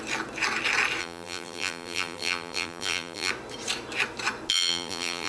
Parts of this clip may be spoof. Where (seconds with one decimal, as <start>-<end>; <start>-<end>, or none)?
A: 1.0-3.3; 4.5-5.3